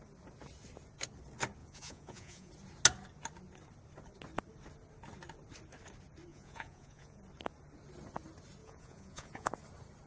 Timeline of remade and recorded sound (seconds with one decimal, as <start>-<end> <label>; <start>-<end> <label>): 0.0-1.6 recorded; 1.6-2.5 remade; 2.5-6.3 recorded; 6.3-7.2 remade; 7.2-8.6 recorded; 8.6-9.5 remade; 9.5-10.1 recorded